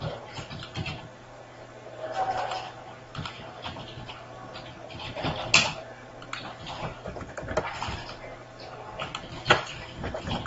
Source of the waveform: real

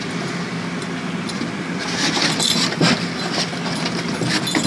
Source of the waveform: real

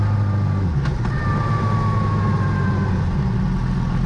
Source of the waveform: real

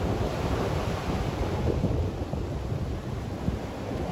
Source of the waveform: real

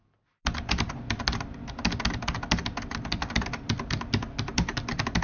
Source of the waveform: real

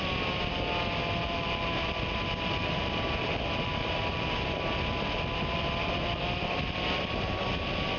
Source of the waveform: real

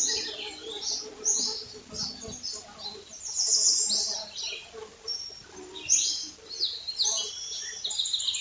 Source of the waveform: real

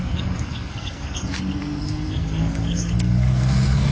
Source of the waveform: fake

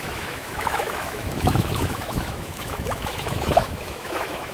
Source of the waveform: fake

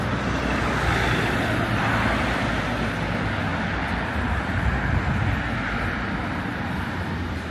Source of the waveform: real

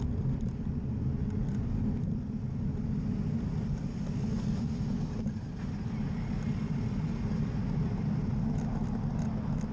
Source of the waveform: real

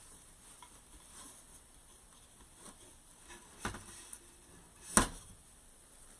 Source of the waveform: real